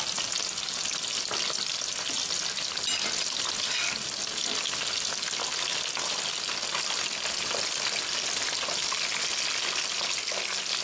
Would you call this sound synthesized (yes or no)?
no